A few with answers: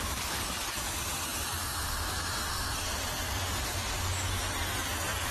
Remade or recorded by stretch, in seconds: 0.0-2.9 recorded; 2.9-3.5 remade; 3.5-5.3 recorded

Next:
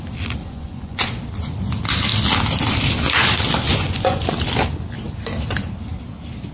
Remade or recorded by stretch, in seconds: 0.0-0.4 recorded; 0.4-1.1 remade; 1.1-3.7 recorded; 3.7-4.2 remade; 4.2-6.5 recorded

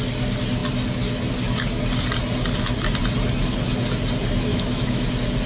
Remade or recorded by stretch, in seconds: 0.0-4.5 recorded; 4.5-5.1 remade; 5.1-5.5 recorded

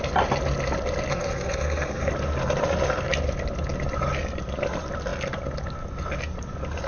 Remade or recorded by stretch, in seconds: 0.0-1.1 recorded; 1.1-2.1 remade; 2.1-6.9 recorded

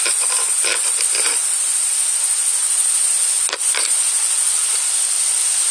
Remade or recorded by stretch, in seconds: 0.0-5.7 recorded

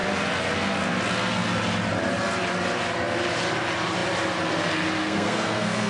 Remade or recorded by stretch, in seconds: 0.0-5.0 recorded; 5.0-5.9 remade

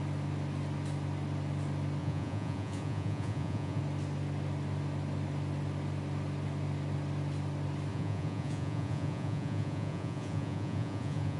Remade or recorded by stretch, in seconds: 0.0-2.0 recorded; 2.0-3.8 remade; 3.8-7.9 recorded; 7.9-11.4 remade

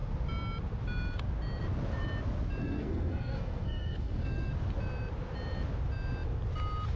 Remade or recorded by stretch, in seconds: 0.0-2.6 recorded; 2.6-4.5 remade; 4.5-7.0 recorded